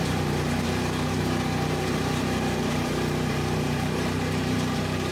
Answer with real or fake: fake